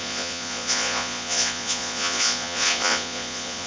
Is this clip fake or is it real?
fake